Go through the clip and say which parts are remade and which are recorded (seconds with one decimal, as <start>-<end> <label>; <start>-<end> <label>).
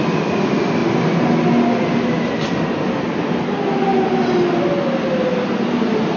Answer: 0.0-6.2 recorded